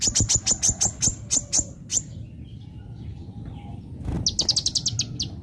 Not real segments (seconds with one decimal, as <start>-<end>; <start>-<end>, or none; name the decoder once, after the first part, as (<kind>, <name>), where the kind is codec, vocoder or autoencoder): none